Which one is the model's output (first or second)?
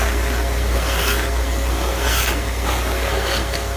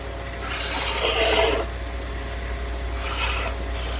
first